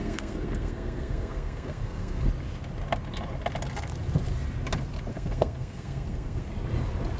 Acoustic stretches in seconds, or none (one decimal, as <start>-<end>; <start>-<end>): 2.3-5.1; 6.4-7.2

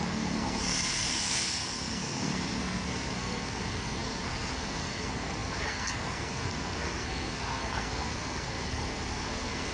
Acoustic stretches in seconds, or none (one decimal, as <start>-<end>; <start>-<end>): none

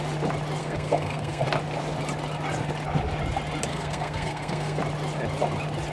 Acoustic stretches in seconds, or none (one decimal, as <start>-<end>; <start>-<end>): 0.0-0.6; 1.4-3.7; 4.8-5.9